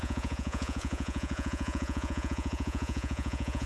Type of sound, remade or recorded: remade